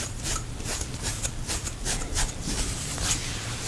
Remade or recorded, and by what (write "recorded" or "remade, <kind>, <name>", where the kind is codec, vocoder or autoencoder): remade, vocoder, BigVGAN v2